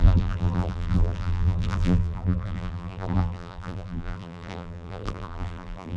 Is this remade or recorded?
remade